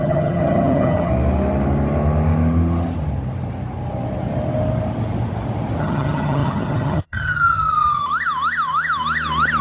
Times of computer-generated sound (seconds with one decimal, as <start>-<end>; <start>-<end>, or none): 0.0-1.1; 5.8-8.0